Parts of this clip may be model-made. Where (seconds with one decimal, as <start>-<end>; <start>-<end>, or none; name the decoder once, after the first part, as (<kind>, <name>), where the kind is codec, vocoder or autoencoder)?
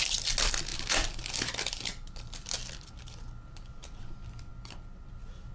none